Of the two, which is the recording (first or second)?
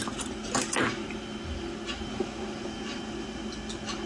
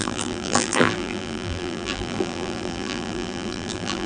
first